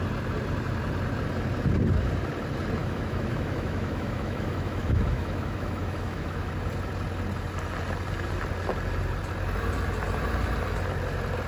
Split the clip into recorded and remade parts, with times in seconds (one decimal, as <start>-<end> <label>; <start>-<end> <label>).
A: 0.0-2.8 recorded; 2.8-6.5 remade; 6.5-11.5 recorded